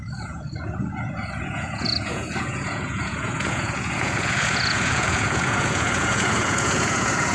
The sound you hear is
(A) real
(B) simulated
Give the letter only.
B